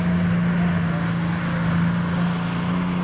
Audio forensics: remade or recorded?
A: recorded